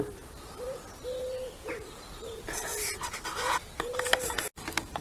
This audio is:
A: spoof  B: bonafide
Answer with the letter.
B